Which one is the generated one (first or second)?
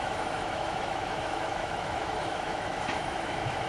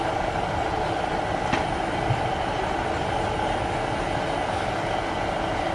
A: first